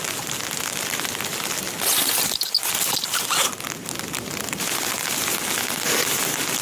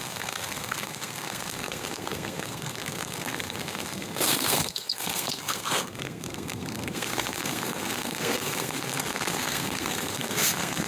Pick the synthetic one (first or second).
second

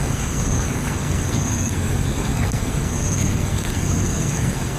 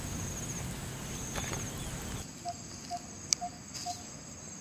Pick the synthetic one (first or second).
first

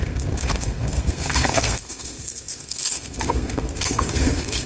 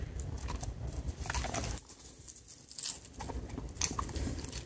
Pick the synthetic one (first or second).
first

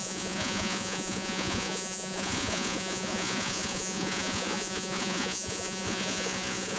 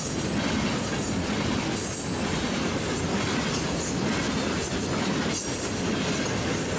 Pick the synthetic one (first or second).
first